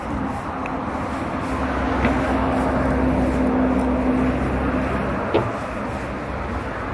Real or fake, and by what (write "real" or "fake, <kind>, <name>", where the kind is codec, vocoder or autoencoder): real